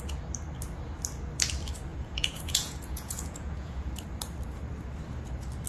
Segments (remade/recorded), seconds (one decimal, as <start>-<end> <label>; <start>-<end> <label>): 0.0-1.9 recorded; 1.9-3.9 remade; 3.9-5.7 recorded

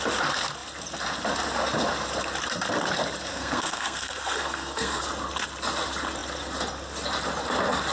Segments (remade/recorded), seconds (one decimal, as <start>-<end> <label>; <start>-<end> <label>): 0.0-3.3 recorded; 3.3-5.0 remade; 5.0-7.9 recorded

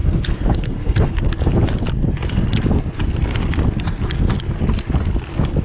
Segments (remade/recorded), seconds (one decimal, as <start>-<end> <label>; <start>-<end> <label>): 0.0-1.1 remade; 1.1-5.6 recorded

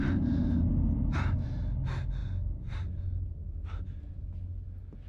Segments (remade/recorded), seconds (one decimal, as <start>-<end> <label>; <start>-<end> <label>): 0.0-5.1 recorded

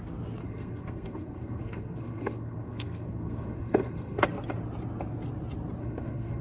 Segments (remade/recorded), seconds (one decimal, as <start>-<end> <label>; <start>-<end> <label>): 0.0-0.4 recorded; 0.4-4.2 remade; 4.2-5.8 recorded; 5.8-6.4 remade

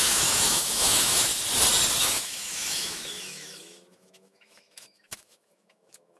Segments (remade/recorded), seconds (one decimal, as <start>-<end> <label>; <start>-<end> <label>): 0.0-1.3 remade; 1.3-2.0 recorded; 2.0-6.2 remade

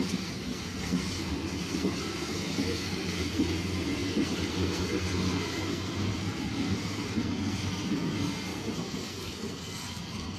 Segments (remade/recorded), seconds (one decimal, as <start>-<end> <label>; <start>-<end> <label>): 0.0-10.4 remade